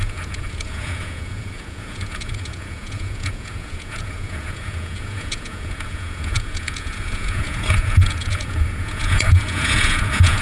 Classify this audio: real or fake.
fake